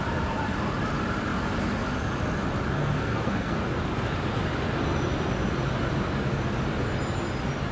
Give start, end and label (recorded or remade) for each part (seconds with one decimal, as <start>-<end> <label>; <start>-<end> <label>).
0.0-2.8 recorded; 2.8-3.6 remade; 3.6-7.7 recorded